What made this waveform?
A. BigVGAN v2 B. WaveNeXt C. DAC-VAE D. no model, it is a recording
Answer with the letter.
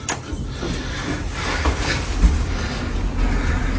D